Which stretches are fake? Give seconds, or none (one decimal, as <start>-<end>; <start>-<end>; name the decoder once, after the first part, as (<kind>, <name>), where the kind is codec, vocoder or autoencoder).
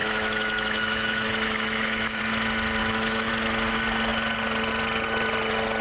0.0-2.2 (autoencoder, DAC-VAE); 2.8-3.3